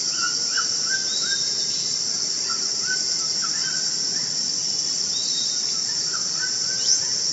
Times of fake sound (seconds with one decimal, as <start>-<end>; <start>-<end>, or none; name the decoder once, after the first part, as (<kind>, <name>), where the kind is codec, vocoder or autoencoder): 1.0-2.0 (vocoder, BigVGAN v2); 4.8-5.3